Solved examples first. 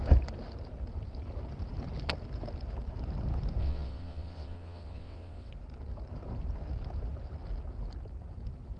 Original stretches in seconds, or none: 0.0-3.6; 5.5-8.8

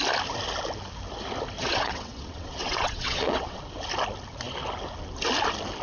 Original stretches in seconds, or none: 0.0-1.6; 3.6-5.8

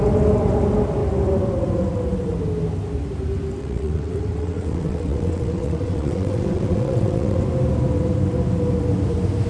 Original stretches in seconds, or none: 0.0-3.6; 7.4-9.5